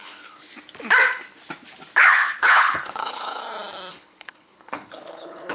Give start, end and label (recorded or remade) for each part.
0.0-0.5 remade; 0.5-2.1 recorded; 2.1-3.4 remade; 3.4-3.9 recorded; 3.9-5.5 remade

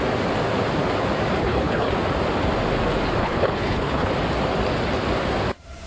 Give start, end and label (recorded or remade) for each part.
0.0-1.4 recorded; 1.4-1.9 remade; 1.9-3.2 recorded; 3.2-4.1 remade; 4.1-5.9 recorded

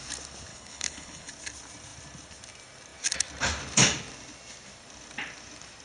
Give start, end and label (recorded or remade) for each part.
0.0-0.5 recorded; 0.5-1.3 remade; 1.3-5.8 recorded

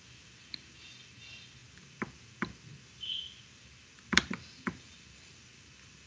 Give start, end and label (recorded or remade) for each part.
0.0-6.1 recorded